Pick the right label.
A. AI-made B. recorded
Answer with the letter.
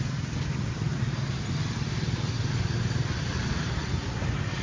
B